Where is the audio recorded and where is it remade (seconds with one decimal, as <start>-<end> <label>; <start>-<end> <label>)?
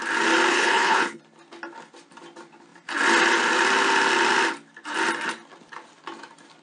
0.0-0.5 recorded; 0.5-1.2 remade; 1.2-6.6 recorded